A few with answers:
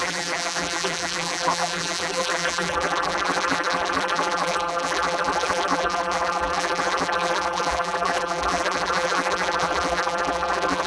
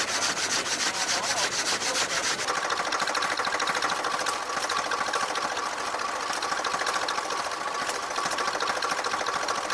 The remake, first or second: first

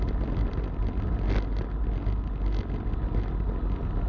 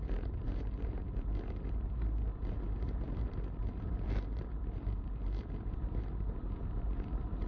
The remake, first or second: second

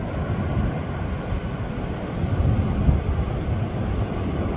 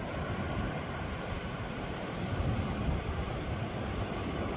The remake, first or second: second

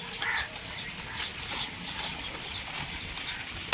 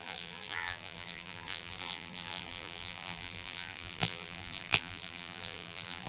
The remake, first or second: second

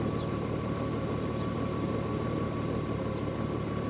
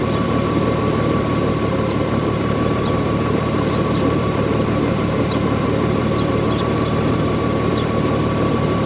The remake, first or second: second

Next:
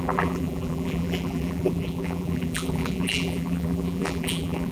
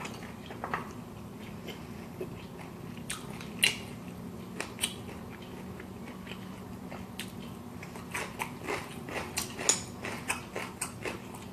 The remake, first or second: first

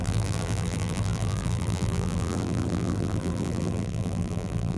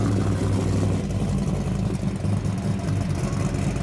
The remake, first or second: first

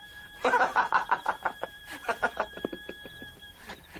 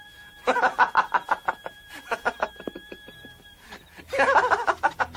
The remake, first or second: first